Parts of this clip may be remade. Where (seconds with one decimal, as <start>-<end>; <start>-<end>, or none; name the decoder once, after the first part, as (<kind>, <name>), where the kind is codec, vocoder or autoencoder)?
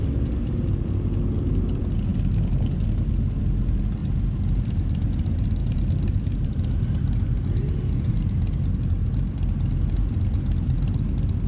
5.6-6.5 (vocoder, BigVGAN v2)